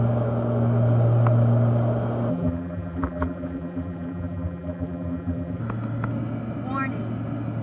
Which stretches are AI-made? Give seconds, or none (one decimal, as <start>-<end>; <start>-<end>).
2.3-5.6